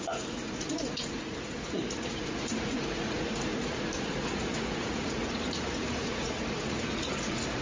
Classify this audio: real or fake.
fake